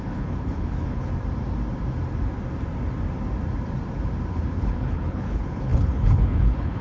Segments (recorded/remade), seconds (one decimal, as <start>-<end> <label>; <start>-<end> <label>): 0.0-1.1 remade; 1.1-4.3 recorded; 4.3-6.8 remade